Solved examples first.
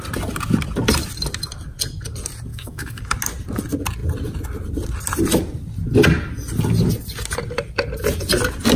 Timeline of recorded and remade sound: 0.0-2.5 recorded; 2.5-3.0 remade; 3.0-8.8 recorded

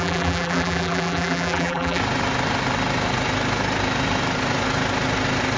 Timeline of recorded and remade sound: 0.0-2.0 remade; 2.0-5.6 recorded